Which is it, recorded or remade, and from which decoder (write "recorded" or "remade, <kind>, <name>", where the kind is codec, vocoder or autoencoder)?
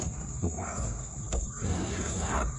remade, codec, SNAC